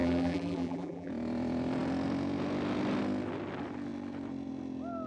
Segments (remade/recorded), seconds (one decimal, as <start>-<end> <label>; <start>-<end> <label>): 0.0-1.1 remade; 1.1-5.1 recorded